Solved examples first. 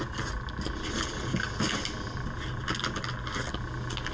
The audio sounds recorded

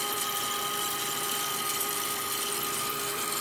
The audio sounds remade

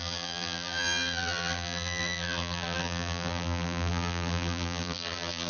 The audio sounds remade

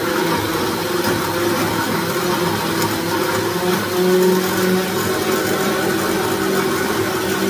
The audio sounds recorded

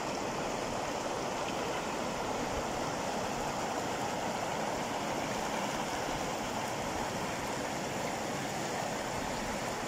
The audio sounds recorded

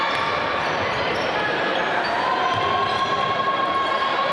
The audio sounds recorded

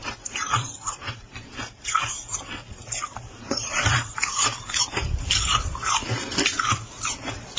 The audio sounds remade